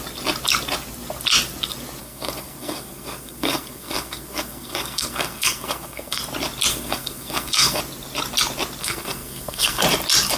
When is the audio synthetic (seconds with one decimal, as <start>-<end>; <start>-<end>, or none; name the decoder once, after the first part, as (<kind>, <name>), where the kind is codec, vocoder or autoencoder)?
2.0-6.2 (codec, SNAC); 6.7-7.8; 8.8-9.8